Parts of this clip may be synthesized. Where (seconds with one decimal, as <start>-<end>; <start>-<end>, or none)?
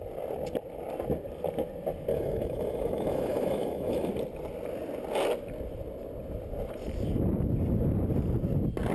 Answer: 2.1-4.1